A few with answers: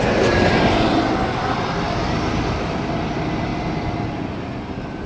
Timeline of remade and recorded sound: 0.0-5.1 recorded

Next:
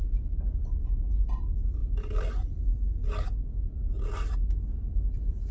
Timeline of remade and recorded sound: 0.0-5.5 recorded

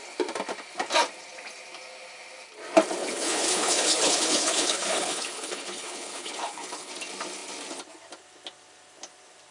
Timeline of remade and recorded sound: 0.0-3.0 recorded; 3.0-6.9 remade; 6.9-9.5 recorded

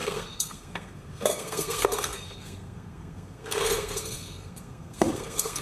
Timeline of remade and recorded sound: 0.0-5.6 remade

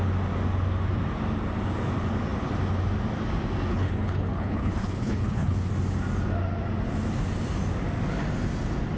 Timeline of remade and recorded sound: 0.0-3.7 recorded; 3.7-5.7 remade; 5.7-9.0 recorded

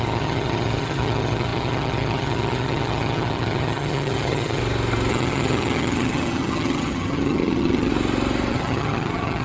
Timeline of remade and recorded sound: 0.0-4.6 remade; 4.6-5.1 recorded; 5.1-7.9 remade; 7.9-8.5 recorded; 8.5-9.4 remade